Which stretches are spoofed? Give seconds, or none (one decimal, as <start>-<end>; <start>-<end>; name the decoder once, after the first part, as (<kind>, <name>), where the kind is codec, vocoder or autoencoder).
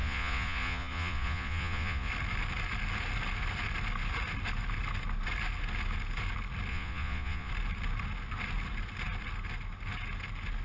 0.0-2.1 (vocoder, Vocos); 6.7-7.5